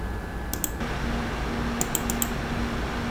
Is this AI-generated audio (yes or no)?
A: no